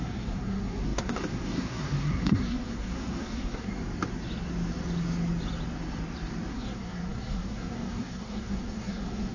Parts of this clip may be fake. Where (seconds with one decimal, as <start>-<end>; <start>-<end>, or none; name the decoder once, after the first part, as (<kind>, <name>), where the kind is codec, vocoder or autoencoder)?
0.0-3.7 (codec, SNAC); 6.5-9.3